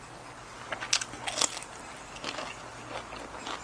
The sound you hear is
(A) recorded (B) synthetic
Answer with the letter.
A